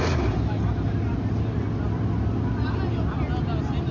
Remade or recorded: recorded